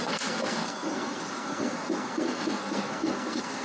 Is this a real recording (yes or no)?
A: no